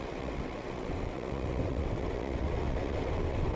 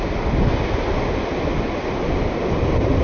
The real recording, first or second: second